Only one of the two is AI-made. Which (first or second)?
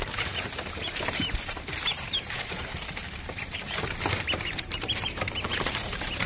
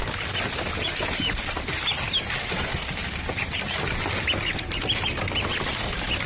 first